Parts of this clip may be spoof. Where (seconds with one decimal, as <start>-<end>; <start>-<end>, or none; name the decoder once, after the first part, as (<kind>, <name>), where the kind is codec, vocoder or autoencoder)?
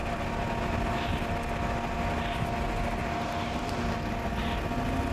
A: none